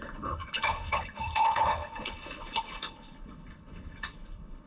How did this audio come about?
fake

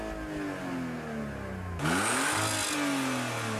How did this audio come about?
real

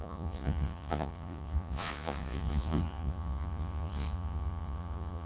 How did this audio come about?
fake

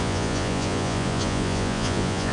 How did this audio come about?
fake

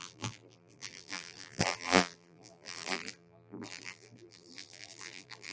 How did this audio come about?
fake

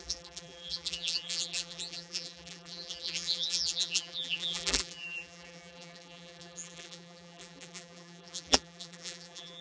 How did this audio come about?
fake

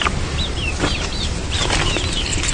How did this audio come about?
fake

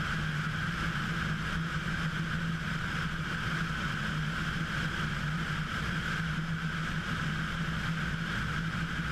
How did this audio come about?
real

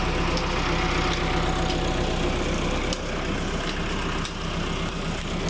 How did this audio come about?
real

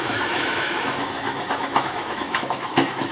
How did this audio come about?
fake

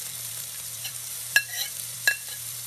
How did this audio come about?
fake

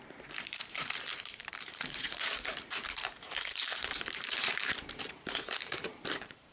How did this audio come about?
fake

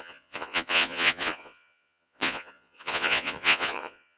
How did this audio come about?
fake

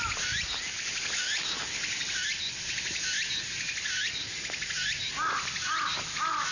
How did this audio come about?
real